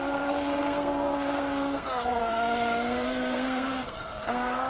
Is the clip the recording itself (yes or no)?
no